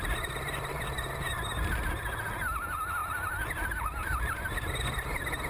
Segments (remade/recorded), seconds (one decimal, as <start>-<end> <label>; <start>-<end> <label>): 0.0-4.0 recorded; 4.0-4.7 remade; 4.7-5.5 recorded